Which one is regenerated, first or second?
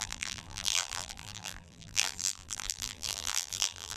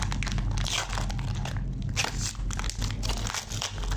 first